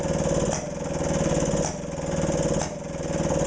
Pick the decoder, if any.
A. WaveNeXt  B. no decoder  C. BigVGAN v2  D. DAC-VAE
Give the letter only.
B